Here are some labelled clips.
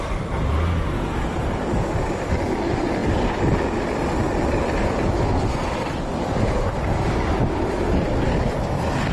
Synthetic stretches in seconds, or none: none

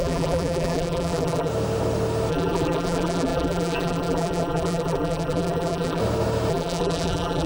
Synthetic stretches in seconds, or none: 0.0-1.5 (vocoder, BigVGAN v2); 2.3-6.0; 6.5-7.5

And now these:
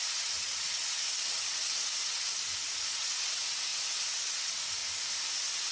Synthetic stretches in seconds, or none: 0.0-4.8 (vocoder, WaveNeXt); 5.3-5.7